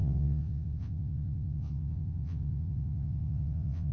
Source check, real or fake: fake